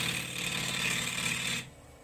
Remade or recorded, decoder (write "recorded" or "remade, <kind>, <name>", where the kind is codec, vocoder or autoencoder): recorded